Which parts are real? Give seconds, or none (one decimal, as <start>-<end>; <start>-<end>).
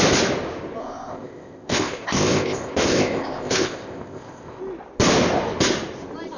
0.0-0.8; 4.6-6.4